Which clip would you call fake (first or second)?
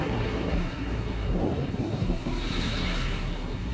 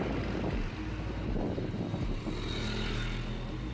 first